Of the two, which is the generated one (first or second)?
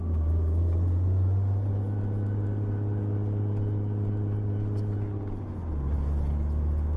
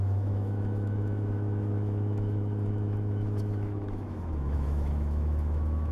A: second